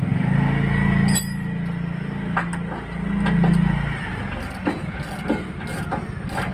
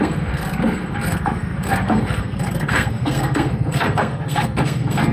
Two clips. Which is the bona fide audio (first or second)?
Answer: first